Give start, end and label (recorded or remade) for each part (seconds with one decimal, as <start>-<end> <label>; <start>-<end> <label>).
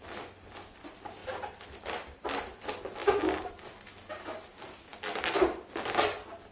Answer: 0.0-6.5 recorded